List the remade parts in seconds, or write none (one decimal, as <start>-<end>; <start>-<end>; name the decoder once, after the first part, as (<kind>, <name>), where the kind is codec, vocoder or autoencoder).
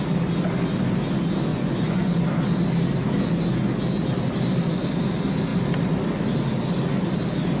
1.5-2.1 (vocoder, Vocos)